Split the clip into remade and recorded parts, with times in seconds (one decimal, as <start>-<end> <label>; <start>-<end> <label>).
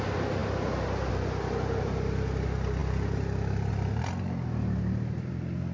0.0-5.7 recorded